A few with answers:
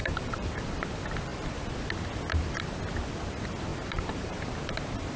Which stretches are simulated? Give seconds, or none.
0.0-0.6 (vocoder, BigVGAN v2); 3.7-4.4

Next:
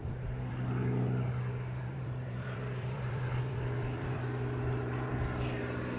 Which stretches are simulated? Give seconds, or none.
1.8-5.1 (vocoder, BigVGAN v2)

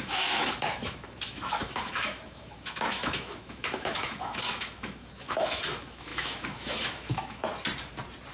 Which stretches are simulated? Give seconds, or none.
0.0-7.5 (autoencoder, DAC-VAE)

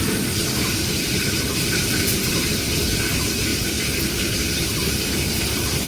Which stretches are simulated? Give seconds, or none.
1.5-3.0 (vocoder, BigVGAN v2); 4.8-5.9

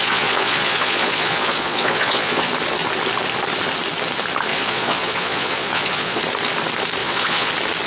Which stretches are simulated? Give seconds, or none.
0.0-2.5 (vocoder, Vocos); 4.5-6.2; 7.0-7.5

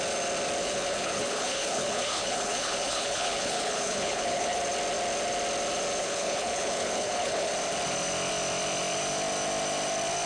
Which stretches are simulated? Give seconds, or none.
0.6-4.6 (codec, HILCodec); 6.0-7.5

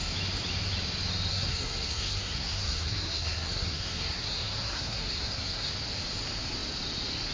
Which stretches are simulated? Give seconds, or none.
1.3-5.7 (codec, SNAC)

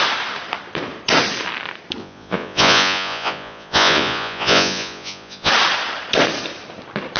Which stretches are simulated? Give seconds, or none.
2.0-5.5 (vocoder, Vocos)